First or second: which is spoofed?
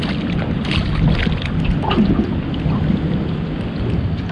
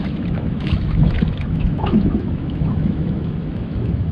second